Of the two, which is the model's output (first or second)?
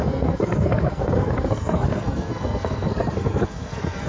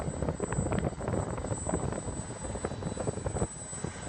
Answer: first